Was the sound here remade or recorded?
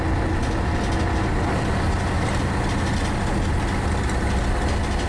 recorded